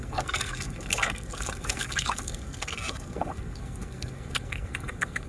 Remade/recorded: remade